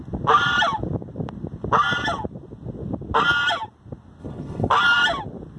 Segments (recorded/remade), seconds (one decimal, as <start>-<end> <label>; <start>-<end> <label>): 0.0-4.2 recorded; 4.2-4.7 remade; 4.7-5.6 recorded